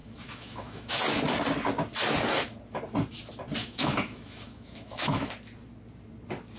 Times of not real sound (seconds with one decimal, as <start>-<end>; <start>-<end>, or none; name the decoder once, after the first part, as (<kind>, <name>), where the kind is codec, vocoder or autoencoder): 0.0-1.0 (autoencoder, DAC-VAE); 3.6-5.3